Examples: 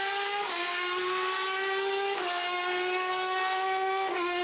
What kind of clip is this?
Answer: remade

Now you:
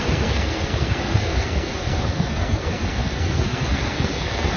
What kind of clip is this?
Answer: remade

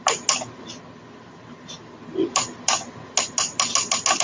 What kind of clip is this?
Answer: recorded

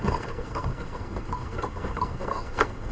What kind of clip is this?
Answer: remade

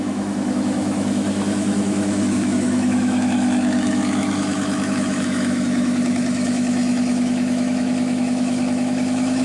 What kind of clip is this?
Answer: remade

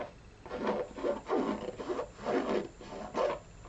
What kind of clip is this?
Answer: recorded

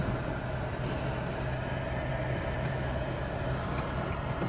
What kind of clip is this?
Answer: recorded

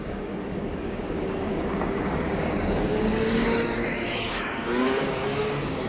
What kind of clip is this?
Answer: remade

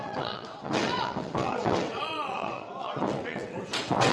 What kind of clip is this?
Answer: remade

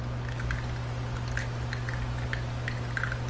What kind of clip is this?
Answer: recorded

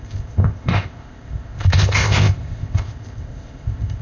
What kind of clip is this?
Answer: remade